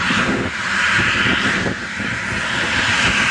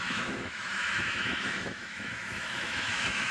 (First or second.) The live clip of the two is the first